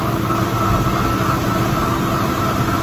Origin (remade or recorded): recorded